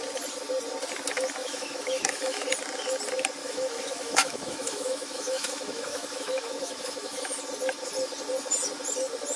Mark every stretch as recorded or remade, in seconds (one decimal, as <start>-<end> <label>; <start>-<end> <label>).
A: 0.0-1.4 recorded; 1.4-2.5 remade; 2.5-3.4 recorded; 3.4-7.4 remade; 7.4-9.4 recorded